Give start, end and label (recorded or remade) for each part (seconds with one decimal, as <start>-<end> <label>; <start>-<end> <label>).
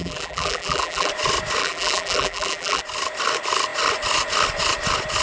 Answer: 0.0-1.1 remade; 1.1-1.6 recorded; 1.6-2.8 remade; 2.8-5.2 recorded